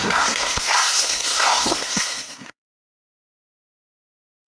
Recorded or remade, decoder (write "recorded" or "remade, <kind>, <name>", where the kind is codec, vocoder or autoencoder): remade, codec, SNAC